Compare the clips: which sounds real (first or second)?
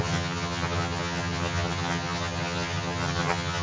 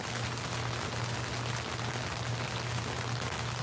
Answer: second